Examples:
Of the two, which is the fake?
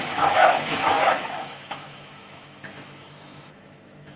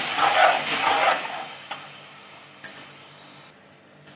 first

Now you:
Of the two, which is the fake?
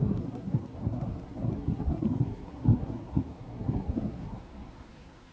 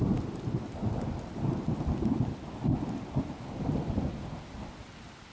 first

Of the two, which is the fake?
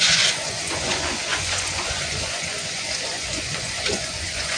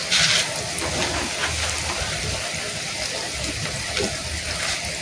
first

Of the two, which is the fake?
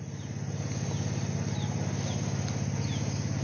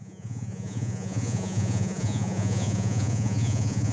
second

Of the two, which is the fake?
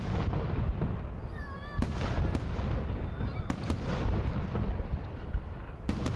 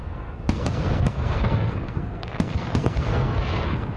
second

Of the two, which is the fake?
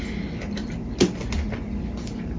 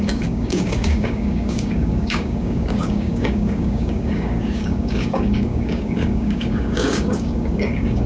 second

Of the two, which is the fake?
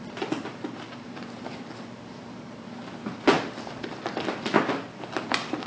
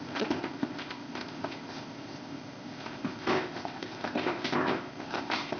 second